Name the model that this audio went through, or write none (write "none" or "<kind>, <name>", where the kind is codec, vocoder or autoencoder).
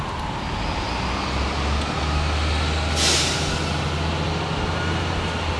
none